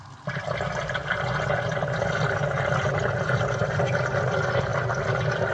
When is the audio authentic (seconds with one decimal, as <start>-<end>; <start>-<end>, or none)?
0.0-5.5